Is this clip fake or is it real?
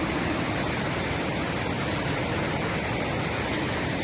real